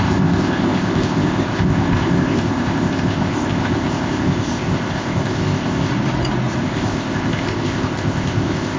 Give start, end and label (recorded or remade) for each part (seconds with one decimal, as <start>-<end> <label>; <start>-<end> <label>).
0.0-5.9 remade; 5.9-6.6 recorded; 6.6-8.8 remade